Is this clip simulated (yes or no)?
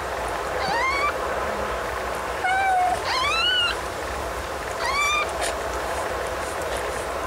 yes